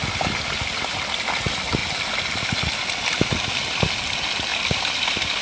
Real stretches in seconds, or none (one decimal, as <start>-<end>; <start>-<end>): 0.0-4.5

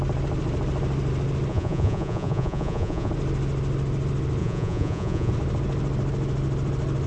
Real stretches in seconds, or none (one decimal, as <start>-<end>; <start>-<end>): 0.0-1.5; 3.1-4.4; 5.3-7.1

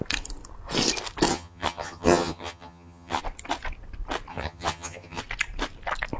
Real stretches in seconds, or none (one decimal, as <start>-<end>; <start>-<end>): 0.0-1.3; 3.2-4.3; 5.2-6.2

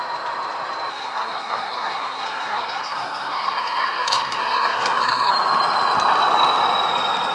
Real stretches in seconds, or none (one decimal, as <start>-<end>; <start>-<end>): 0.0-0.9; 5.3-7.3